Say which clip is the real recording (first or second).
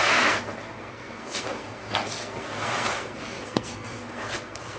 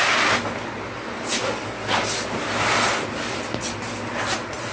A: second